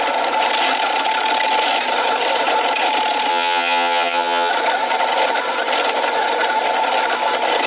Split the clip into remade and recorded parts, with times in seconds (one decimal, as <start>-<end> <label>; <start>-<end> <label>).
0.0-3.3 recorded; 3.3-4.5 remade; 4.5-7.7 recorded